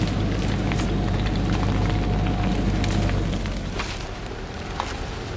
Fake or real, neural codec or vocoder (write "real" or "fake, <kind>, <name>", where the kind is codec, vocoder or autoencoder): real